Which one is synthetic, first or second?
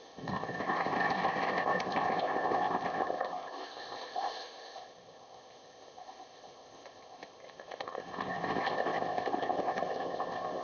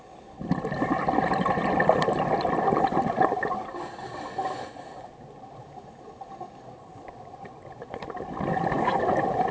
first